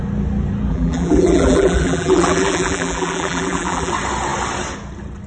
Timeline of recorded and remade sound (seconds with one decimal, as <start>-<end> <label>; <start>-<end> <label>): 0.0-0.7 recorded; 0.7-3.9 remade; 3.9-5.3 recorded